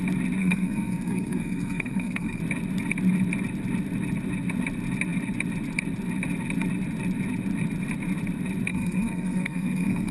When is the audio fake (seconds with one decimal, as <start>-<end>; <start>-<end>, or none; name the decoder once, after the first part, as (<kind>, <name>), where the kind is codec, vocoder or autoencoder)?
0.4-2.4 (codec, SNAC); 8.7-10.1